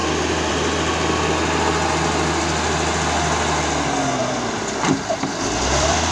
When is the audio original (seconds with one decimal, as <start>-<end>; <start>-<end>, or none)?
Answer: 0.0-4.2